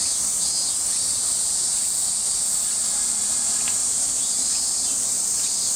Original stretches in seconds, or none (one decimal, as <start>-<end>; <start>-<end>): 0.0-3.8